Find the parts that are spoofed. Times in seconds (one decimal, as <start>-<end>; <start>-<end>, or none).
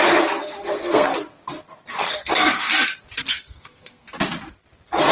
0.4-1.1; 2.0-2.7; 3.3-4.1